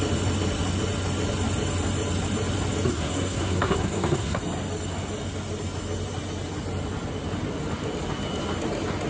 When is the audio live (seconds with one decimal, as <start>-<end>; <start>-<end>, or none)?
0.0-2.9; 4.4-9.1